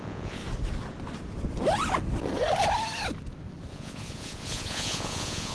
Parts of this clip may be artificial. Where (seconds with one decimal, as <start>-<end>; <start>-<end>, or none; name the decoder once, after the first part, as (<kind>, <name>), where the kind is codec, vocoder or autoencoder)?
0.0-0.4 (vocoder, Vocos); 3.7-5.5